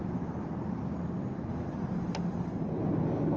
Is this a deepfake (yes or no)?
no